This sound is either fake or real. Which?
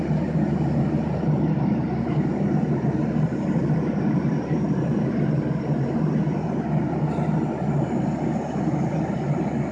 real